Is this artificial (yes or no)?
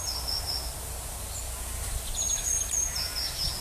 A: no